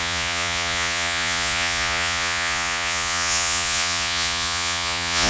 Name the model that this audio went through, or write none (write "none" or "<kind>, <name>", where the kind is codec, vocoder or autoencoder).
vocoder, Vocos